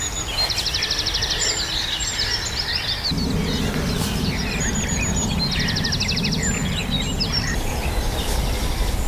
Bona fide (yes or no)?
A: yes